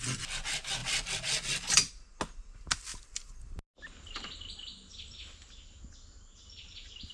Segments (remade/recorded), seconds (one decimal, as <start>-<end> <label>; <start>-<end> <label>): 0.0-0.8 recorded; 0.8-1.9 remade; 1.9-2.9 recorded; 2.9-3.5 remade; 3.5-7.1 recorded

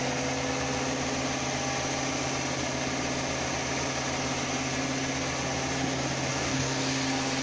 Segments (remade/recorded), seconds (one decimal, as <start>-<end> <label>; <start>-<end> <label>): 0.0-6.3 recorded; 6.3-6.8 remade; 6.8-7.4 recorded

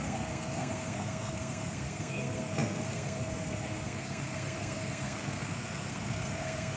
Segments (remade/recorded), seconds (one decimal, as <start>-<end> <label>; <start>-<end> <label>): 0.0-6.8 remade

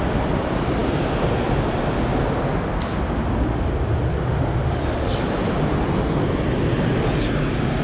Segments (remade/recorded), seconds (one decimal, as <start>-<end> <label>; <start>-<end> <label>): 0.0-7.8 recorded

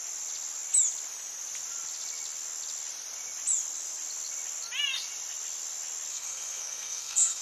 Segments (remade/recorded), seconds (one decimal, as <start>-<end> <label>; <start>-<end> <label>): 0.0-6.1 recorded; 6.1-7.4 remade

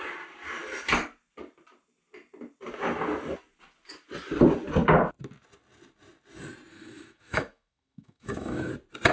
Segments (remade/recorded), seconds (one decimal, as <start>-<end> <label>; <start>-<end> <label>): 0.0-6.7 recorded; 6.7-8.7 remade; 8.7-9.1 recorded

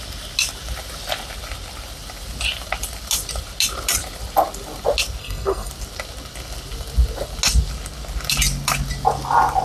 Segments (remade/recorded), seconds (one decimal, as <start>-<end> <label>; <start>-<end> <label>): 0.0-5.2 recorded; 5.2-5.7 remade; 5.7-9.6 recorded